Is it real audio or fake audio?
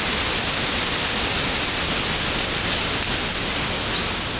real